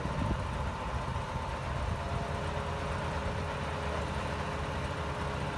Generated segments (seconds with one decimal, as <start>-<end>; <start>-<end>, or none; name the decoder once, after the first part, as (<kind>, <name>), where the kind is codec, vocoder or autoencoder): none